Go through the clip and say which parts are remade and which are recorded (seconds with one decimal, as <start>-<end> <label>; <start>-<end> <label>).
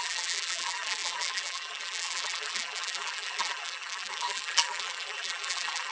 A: 0.0-5.9 remade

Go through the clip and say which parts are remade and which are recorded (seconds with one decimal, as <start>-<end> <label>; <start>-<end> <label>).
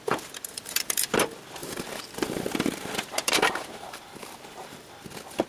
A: 0.0-0.5 recorded; 0.5-1.2 remade; 1.2-1.6 recorded; 1.6-4.9 remade; 4.9-5.5 recorded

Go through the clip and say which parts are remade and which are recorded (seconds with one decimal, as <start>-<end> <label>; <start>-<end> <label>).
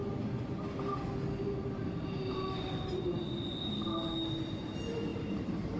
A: 0.0-5.1 recorded; 5.1-5.8 remade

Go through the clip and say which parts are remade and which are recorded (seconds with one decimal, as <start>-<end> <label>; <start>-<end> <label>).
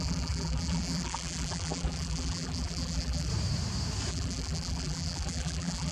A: 0.0-3.3 remade; 3.3-4.1 recorded; 4.1-5.9 remade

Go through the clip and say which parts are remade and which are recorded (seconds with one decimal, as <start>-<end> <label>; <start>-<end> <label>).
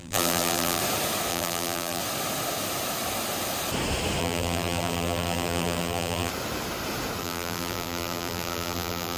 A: 0.0-0.8 remade; 0.8-1.3 recorded; 1.3-2.0 remade; 2.0-4.2 recorded; 4.2-6.3 remade; 6.3-7.2 recorded; 7.2-9.2 remade